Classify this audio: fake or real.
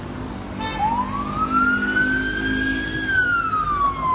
real